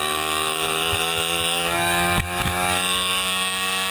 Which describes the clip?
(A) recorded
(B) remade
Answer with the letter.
B